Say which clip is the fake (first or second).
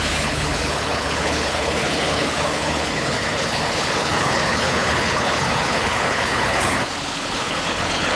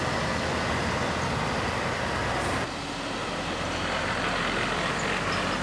first